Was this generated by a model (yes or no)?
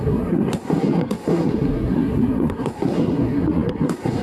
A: yes